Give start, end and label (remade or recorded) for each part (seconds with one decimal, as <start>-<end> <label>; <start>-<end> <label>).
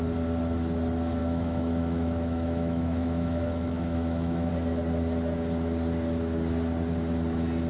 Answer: 0.0-1.2 recorded; 1.2-4.5 remade; 4.5-7.7 recorded